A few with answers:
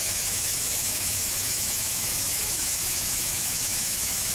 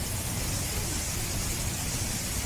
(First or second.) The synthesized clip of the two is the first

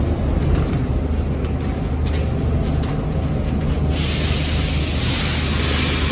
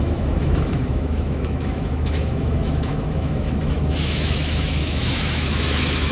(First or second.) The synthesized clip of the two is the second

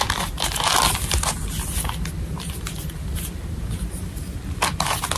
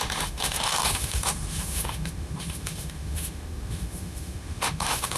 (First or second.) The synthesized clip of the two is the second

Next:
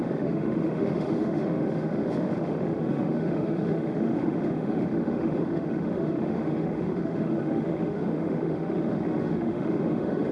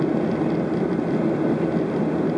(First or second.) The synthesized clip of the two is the first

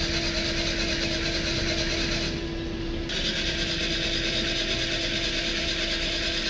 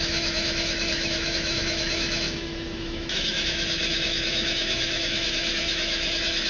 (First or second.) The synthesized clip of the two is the second